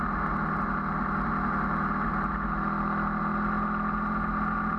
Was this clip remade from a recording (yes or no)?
no